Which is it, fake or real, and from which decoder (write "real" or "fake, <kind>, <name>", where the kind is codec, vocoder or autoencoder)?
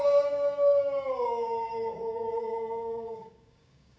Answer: fake, codec, DAC